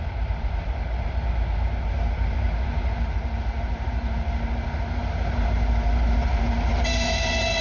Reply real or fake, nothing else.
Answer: fake